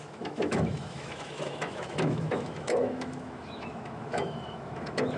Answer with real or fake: fake